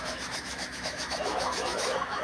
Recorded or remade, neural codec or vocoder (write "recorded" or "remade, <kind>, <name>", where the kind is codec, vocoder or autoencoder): remade, autoencoder, DAC-VAE